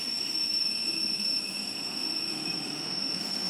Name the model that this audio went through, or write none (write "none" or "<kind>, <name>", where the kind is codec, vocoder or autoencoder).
autoencoder, DAC-VAE